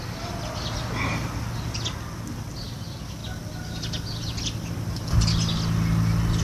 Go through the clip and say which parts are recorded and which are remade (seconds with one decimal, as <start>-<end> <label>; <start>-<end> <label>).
0.0-3.2 remade; 3.2-5.3 recorded; 5.3-6.4 remade